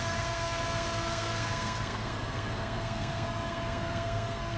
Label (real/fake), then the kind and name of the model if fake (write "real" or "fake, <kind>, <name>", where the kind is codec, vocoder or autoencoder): fake, codec, SNAC